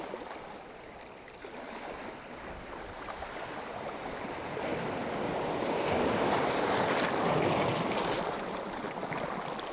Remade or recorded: recorded